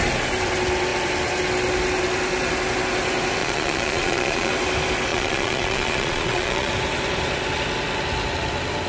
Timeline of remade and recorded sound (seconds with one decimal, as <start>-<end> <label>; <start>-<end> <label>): 0.0-3.4 recorded; 3.4-4.5 remade; 4.5-5.1 recorded; 5.1-6.7 remade; 6.7-8.9 recorded